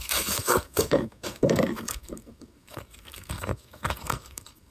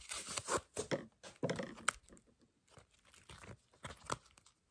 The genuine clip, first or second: second